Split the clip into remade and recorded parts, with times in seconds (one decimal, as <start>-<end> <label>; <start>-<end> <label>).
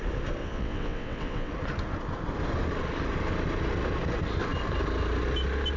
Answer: 0.0-0.4 recorded; 0.4-1.5 remade; 1.5-5.8 recorded